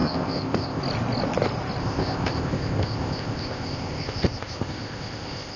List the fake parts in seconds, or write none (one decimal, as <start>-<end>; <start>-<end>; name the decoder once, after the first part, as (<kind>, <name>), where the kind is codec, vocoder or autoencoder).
0.0-0.8 (codec, ZipCodec); 1.8-5.6